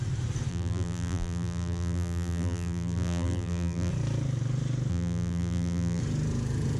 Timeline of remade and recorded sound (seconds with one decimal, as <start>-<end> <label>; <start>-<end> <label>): 0.0-0.5 recorded; 0.5-3.9 remade; 3.9-4.9 recorded; 4.9-6.0 remade; 6.0-6.8 recorded